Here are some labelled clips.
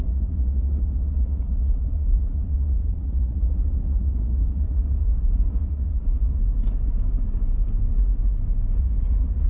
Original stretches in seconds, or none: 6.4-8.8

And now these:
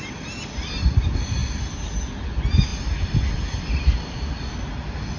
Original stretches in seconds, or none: 0.0-5.2

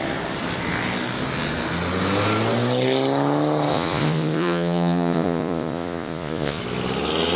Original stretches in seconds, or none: 0.0-3.7; 6.6-7.4

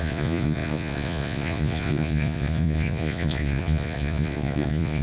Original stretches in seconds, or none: none

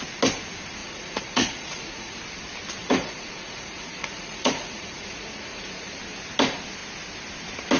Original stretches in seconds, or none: 0.0-0.8; 2.2-2.8; 6.0-7.8

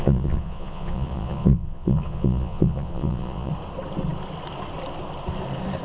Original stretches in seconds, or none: 3.5-5.8

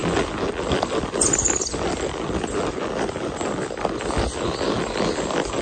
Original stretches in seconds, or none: 0.0-5.6